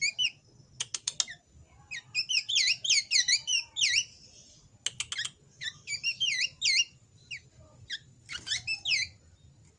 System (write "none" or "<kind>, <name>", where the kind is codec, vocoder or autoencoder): none